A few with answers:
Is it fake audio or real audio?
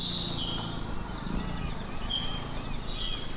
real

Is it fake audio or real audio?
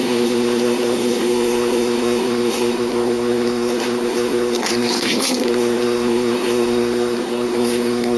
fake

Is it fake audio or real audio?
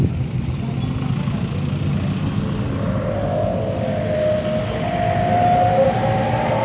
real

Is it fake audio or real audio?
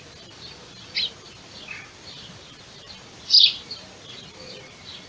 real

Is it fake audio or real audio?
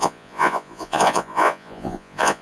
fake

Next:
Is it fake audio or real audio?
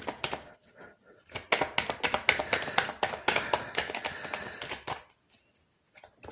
real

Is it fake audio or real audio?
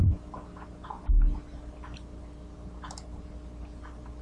real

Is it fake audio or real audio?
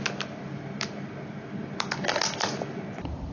real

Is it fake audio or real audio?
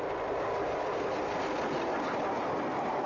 real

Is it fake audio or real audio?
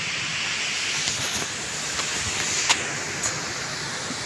real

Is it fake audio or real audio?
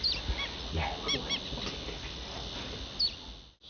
real